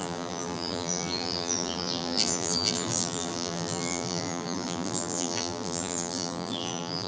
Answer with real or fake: fake